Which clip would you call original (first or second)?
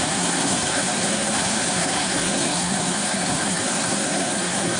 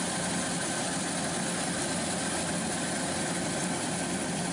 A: second